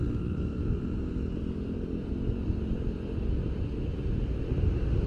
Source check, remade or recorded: remade